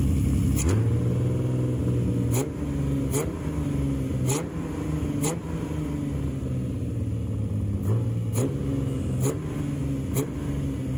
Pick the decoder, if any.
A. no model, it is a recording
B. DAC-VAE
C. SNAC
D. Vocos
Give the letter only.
A